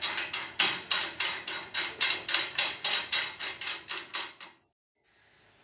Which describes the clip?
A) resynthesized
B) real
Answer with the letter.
B